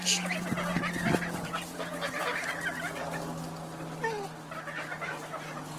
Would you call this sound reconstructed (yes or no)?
no